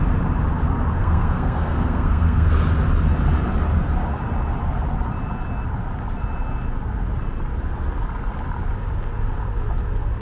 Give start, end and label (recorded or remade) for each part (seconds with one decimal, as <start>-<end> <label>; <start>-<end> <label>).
0.0-1.0 recorded; 1.0-2.5 remade; 2.5-10.2 recorded